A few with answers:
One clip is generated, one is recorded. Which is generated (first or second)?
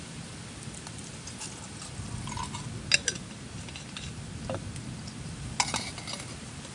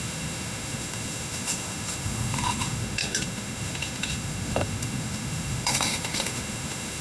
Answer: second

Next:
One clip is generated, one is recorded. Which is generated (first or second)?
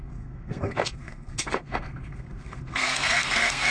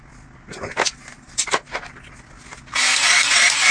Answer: first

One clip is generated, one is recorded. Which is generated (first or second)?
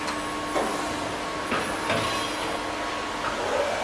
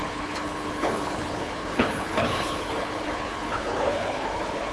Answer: second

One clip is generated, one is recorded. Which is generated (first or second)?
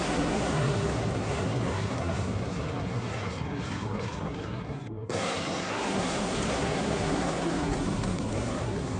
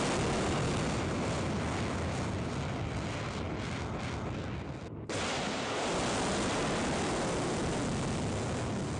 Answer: first